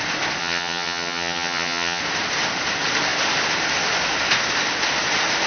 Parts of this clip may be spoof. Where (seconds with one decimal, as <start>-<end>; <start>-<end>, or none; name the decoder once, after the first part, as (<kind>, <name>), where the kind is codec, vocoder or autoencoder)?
0.4-2.0 (vocoder, HiFi-GAN)